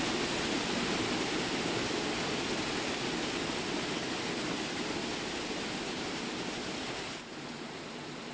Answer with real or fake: real